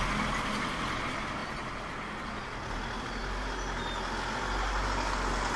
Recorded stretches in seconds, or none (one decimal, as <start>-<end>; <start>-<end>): 0.0-5.6